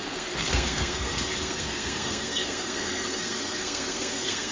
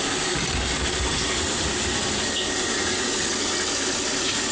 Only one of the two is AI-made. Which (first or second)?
first